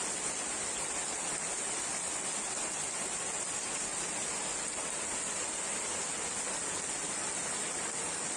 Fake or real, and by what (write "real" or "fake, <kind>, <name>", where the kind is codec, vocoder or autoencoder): real